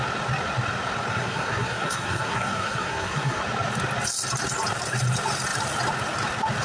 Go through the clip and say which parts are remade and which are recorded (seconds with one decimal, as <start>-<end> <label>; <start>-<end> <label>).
0.0-1.1 recorded; 1.1-3.4 remade; 3.4-6.6 recorded